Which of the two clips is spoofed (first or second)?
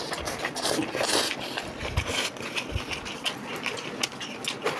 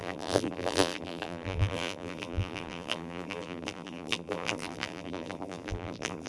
second